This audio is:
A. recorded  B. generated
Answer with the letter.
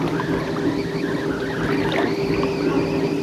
A